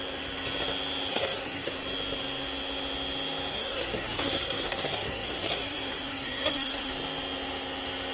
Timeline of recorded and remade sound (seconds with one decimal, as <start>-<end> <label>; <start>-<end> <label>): 0.0-1.1 recorded; 1.1-1.7 remade; 1.7-3.5 recorded; 3.5-6.9 remade; 6.9-8.1 recorded